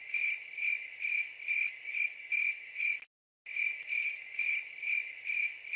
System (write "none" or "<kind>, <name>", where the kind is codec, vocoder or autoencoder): none